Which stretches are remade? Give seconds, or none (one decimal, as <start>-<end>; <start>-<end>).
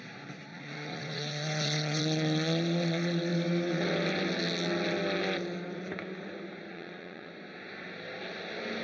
0.5-2.0; 6.7-7.3